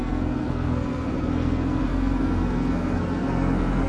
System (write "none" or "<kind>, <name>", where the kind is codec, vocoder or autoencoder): codec, SNAC